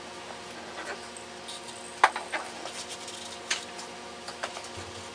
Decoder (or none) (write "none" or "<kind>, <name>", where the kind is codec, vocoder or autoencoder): none